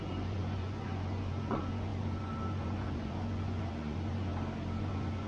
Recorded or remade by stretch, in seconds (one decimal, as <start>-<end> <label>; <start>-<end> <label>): 0.0-4.3 remade; 4.3-4.8 recorded; 4.8-5.3 remade